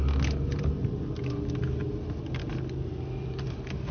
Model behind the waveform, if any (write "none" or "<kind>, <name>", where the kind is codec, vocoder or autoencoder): none